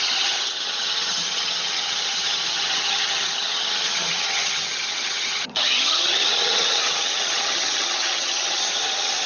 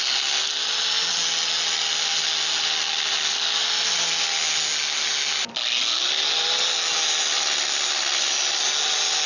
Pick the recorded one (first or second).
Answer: second